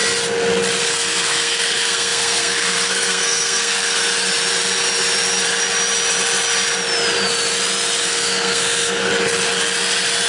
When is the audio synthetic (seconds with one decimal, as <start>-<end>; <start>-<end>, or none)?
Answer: 0.8-4.0; 8.0-9.1

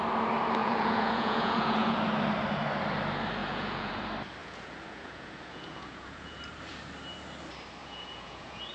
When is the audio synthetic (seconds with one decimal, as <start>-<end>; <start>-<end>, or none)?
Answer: 0.6-2.0; 3.4-4.0; 4.4-6.4; 7.8-8.7

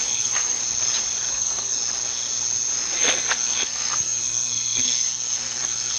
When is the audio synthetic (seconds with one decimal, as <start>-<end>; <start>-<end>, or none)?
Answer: 0.0-0.6; 1.3-1.8; 3.0-6.0